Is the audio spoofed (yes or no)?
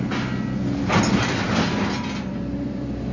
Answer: no